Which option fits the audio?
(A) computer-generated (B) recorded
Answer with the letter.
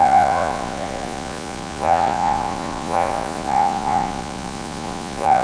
A